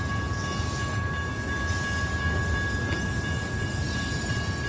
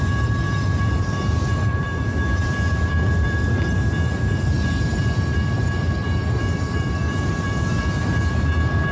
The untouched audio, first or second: first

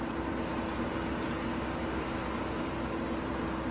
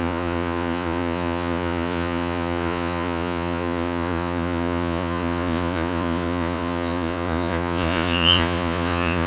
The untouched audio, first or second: first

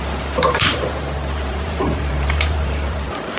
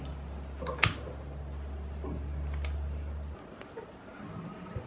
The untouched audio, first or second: second